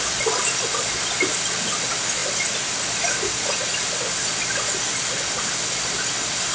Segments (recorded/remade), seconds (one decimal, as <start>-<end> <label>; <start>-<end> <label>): 0.0-6.5 recorded